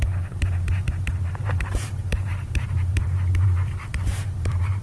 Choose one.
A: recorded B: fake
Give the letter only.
B